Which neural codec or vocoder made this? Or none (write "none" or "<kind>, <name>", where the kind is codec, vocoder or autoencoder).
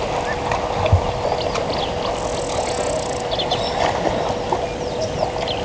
none